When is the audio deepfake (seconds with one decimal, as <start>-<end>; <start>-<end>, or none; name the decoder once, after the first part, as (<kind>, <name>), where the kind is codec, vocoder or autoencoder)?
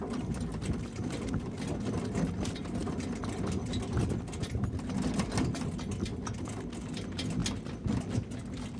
none